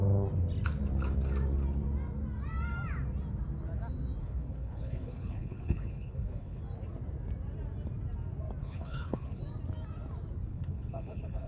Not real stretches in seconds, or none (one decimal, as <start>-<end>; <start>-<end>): 4.2-6.6; 8.6-9.4; 10.5-11.5